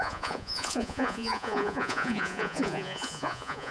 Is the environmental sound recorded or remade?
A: remade